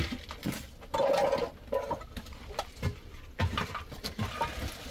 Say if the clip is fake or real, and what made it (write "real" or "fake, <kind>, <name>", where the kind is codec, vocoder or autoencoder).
real